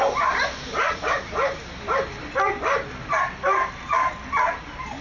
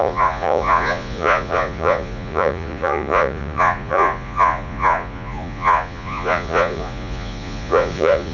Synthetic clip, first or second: second